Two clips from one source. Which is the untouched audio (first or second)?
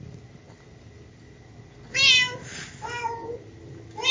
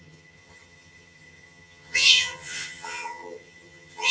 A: first